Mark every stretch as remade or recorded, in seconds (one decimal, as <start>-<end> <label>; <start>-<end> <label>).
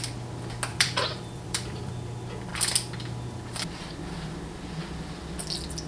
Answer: 0.0-0.7 recorded; 0.7-1.9 remade; 1.9-5.9 recorded